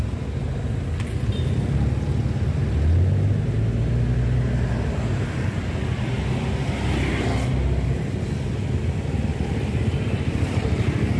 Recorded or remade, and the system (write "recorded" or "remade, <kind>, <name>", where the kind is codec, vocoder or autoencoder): recorded